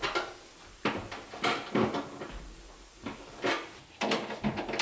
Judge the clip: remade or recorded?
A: recorded